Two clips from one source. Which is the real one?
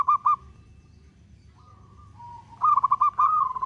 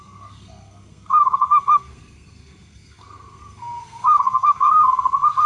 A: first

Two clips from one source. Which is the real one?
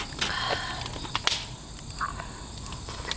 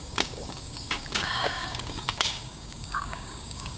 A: first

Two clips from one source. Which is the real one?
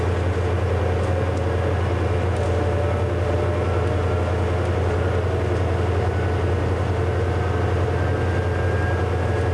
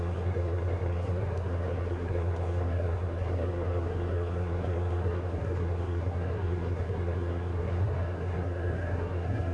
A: first